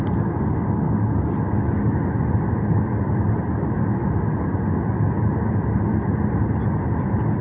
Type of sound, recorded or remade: recorded